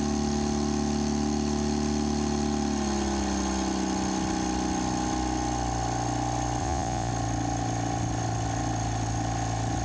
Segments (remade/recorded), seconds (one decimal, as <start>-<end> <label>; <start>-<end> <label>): 0.0-6.6 recorded; 6.6-7.1 remade; 7.1-9.8 recorded